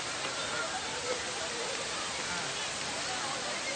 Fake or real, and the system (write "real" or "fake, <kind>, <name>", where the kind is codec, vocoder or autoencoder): real